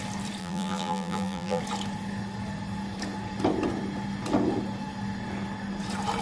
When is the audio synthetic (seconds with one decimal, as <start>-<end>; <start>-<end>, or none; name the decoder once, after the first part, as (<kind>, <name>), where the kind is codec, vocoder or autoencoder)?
0.4-1.6 (vocoder, BigVGAN v2)